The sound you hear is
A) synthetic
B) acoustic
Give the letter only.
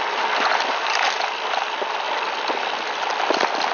B